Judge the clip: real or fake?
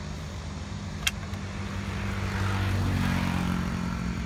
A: real